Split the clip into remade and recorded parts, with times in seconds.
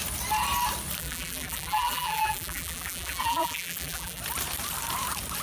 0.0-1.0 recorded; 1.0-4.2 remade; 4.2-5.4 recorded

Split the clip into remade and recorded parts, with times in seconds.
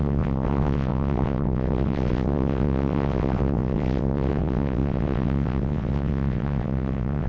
0.0-7.3 remade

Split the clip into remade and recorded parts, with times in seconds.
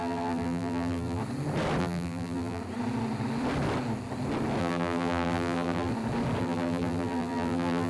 0.0-1.2 remade; 1.2-1.8 recorded; 1.8-2.6 remade; 2.6-4.6 recorded; 4.6-5.9 remade; 5.9-6.4 recorded; 6.4-7.9 remade